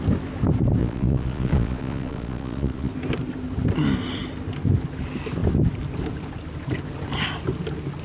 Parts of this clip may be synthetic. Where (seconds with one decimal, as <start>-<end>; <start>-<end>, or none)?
0.8-2.9

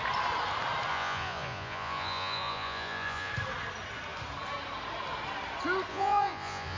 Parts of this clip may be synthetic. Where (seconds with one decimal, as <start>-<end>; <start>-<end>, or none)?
0.9-3.3; 5.9-6.8

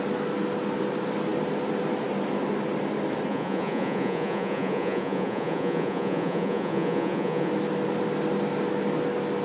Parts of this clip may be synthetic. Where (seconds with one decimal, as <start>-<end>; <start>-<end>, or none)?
3.3-7.5

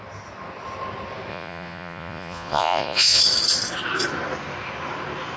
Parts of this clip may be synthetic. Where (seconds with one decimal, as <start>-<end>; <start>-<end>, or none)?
1.3-3.2

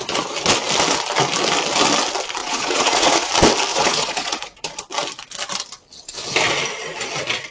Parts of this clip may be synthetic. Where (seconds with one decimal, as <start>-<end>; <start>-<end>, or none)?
2.4-3.3; 3.7-4.8

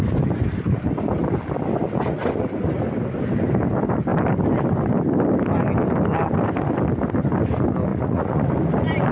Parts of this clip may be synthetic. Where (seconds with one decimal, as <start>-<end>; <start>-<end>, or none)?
7.9-8.5

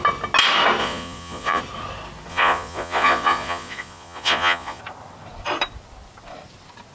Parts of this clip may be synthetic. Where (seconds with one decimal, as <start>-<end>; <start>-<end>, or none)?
0.8-1.6; 2.3-4.8